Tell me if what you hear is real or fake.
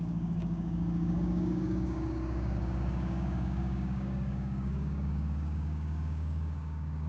fake